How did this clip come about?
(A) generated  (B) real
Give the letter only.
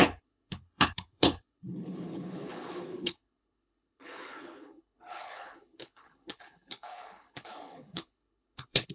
A